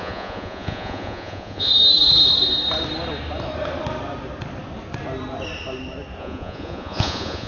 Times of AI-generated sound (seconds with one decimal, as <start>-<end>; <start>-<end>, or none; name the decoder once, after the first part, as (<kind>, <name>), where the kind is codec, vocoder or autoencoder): 0.0-1.7 (vocoder, Vocos); 6.2-7.5